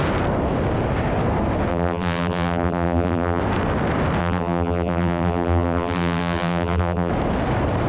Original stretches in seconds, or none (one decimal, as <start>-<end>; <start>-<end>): 0.0-1.7; 3.4-4.2; 7.1-7.9